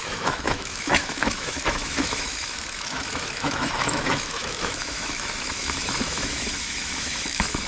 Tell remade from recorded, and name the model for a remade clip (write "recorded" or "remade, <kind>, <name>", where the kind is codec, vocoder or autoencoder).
remade, autoencoder, DAC-VAE